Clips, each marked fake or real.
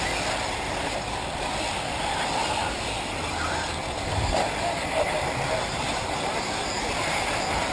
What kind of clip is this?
real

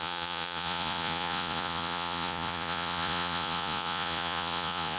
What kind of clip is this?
fake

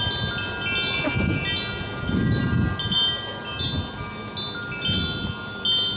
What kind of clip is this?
real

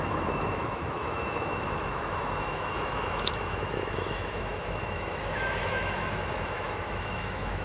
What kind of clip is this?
fake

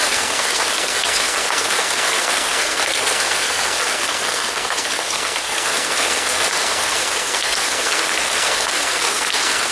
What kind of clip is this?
fake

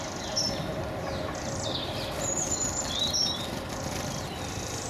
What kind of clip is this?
fake